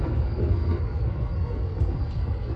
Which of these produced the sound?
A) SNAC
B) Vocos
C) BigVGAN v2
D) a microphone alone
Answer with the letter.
A